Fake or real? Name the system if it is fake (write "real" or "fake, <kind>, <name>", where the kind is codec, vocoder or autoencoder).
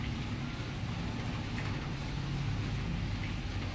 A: real